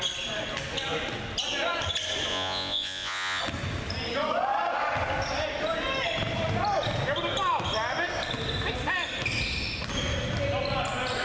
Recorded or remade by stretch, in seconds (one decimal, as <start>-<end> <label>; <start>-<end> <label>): 0.0-2.3 recorded; 2.3-3.4 remade; 3.4-11.2 recorded